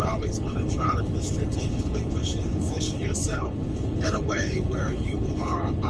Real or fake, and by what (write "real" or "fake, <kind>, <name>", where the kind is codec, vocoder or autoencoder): fake, codec, HILCodec